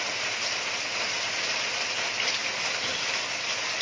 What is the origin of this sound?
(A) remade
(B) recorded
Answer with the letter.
B